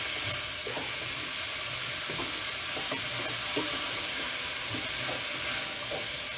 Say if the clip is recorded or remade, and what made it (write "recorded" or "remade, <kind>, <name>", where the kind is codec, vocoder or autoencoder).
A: recorded